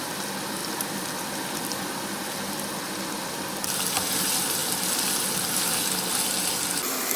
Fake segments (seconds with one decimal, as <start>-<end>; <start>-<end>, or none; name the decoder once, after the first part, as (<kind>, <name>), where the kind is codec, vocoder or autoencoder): none